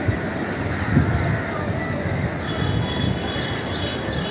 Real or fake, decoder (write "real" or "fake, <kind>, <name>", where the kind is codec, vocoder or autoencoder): real